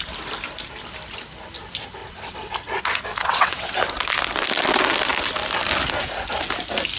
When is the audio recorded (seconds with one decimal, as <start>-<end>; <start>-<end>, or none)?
0.0-2.0; 2.5-3.2; 3.7-7.0